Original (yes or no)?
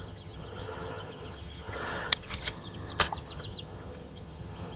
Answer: no